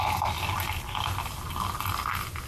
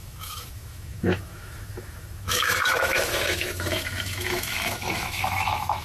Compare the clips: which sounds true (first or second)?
first